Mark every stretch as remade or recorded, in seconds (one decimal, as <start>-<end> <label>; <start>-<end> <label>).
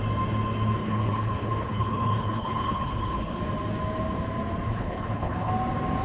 0.0-0.8 recorded; 0.8-3.4 remade; 3.4-4.7 recorded; 4.7-5.5 remade; 5.5-6.0 recorded